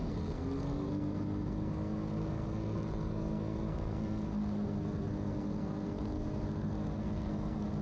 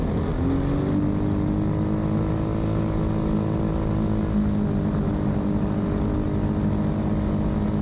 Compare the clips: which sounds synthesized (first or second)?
first